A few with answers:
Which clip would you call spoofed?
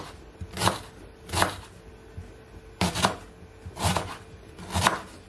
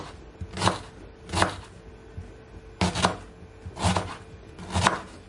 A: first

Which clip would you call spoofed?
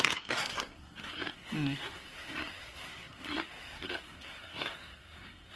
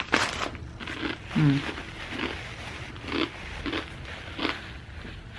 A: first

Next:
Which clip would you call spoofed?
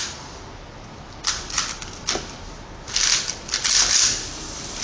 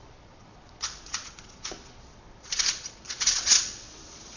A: second